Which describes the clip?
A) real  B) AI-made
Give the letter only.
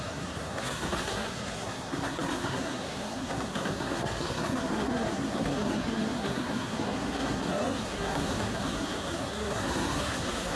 B